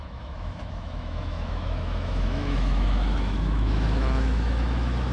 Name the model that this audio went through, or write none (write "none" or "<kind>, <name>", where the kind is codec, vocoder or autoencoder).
autoencoder, DAC-VAE